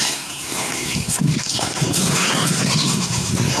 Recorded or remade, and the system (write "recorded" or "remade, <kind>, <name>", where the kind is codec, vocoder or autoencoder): remade, codec, SNAC